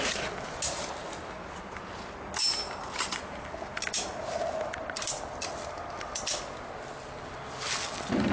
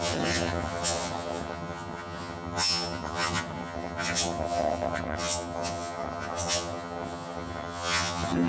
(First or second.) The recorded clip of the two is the first